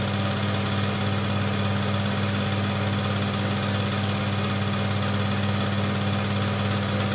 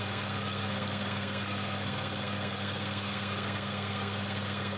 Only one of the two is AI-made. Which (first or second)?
second